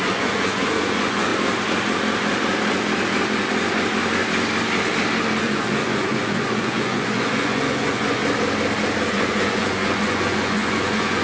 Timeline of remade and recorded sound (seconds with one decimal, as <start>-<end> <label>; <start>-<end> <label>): 0.0-1.3 remade; 1.3-5.4 recorded; 5.4-8.2 remade; 8.2-9.1 recorded; 9.1-11.2 remade